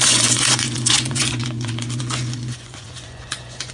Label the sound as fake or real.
fake